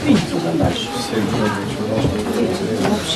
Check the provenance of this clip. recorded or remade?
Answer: recorded